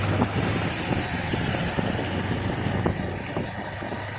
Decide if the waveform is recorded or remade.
recorded